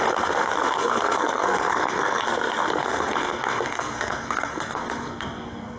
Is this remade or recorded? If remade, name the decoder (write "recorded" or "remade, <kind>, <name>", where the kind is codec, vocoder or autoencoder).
remade, codec, SNAC